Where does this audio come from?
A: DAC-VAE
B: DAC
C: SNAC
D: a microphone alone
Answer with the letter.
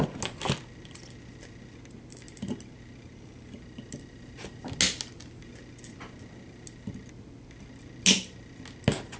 D